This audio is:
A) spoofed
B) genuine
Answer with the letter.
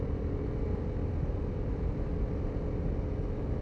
B